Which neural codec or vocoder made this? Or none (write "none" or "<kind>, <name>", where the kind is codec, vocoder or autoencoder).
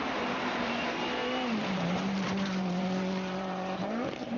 vocoder, BigVGAN v2